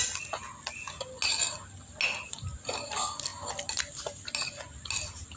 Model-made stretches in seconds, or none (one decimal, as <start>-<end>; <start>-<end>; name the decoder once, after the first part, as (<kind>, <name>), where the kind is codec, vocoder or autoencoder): none